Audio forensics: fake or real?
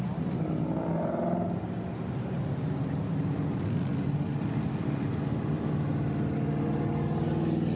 real